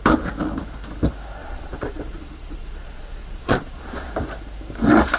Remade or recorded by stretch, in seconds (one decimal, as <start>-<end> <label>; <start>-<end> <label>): 0.0-1.4 recorded; 1.4-4.1 remade; 4.1-5.2 recorded